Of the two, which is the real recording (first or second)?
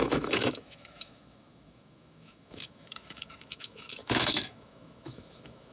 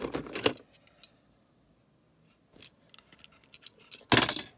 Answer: second